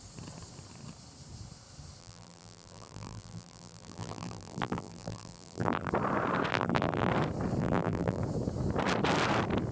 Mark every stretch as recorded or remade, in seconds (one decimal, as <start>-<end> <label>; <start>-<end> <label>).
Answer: 0.0-2.0 recorded; 2.0-5.9 remade; 5.9-6.5 recorded; 6.5-7.1 remade; 7.1-7.6 recorded; 7.6-8.2 remade; 8.2-9.7 recorded